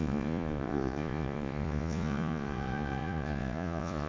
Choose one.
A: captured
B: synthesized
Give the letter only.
B